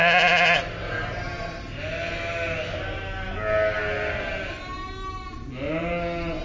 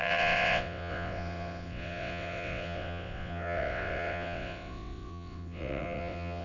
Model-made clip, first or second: second